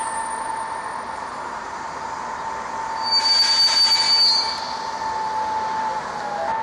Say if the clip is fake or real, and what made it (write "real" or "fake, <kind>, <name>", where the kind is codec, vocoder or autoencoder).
real